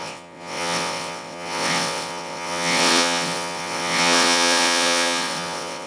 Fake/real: fake